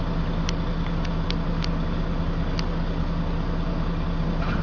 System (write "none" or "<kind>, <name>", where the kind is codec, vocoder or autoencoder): none